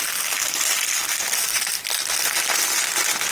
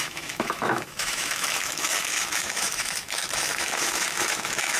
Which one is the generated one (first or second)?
second